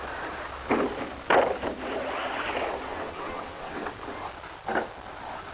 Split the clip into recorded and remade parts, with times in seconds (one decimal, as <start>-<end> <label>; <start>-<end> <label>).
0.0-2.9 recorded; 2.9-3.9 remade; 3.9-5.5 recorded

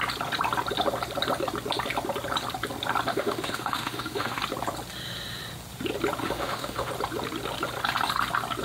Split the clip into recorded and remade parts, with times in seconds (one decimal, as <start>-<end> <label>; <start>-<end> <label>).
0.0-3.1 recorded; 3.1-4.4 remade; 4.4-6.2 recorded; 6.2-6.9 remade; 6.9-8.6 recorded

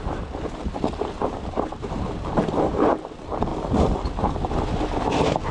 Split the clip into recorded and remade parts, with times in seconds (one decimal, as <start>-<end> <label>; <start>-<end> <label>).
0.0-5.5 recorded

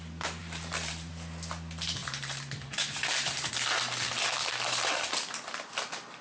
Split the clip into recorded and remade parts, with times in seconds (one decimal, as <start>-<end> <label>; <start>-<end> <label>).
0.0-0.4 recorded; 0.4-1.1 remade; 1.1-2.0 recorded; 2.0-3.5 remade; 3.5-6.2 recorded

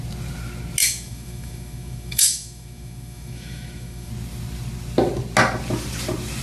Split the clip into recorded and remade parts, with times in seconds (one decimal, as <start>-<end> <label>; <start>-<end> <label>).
0.0-0.8 recorded; 0.8-4.1 remade; 4.1-6.4 recorded